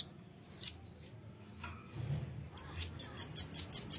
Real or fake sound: real